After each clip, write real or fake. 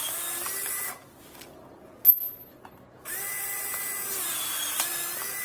real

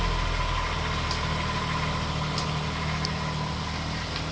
real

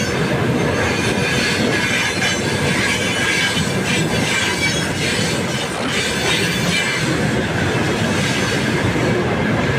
real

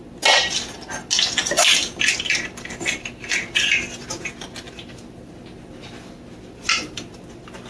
real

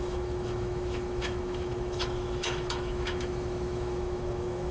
fake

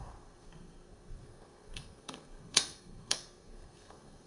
fake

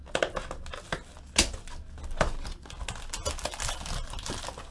real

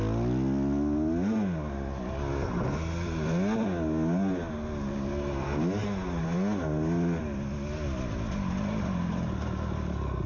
real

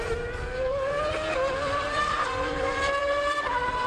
fake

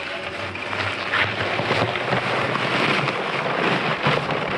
real